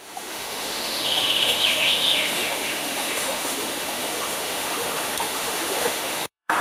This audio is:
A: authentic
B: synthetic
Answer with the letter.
B